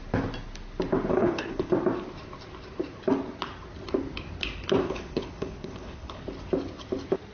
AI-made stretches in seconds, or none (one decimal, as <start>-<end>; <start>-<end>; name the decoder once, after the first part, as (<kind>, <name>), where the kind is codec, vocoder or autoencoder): 1.1-1.7 (codec, HILCodec); 4.8-6.2